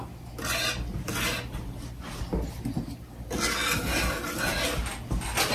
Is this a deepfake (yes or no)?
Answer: no